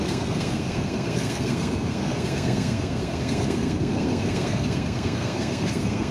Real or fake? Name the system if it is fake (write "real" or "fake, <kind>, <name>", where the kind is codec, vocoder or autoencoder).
fake, codec, SNAC